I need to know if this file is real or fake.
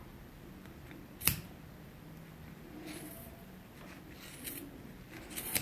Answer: fake